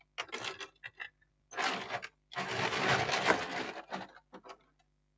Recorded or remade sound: recorded